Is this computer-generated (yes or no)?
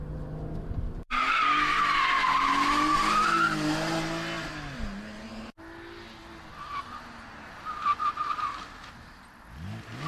no